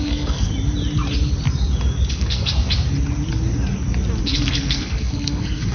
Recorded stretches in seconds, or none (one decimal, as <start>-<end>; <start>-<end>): 0.5-2.1; 2.5-4.2